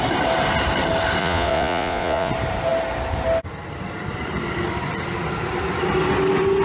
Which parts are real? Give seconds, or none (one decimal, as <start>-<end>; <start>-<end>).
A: 0.0-1.2; 2.3-6.6